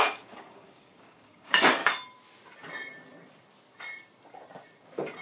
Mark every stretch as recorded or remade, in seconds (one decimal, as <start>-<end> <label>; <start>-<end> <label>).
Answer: 0.0-1.8 remade; 1.8-5.2 recorded